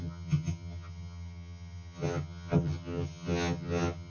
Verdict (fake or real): fake